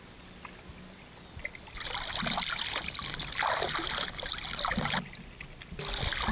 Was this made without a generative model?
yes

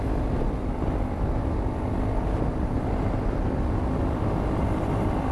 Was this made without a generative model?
yes